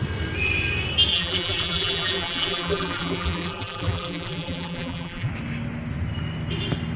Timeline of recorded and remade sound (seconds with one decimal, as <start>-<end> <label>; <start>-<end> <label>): 0.0-1.1 recorded; 1.1-5.3 remade; 5.3-7.0 recorded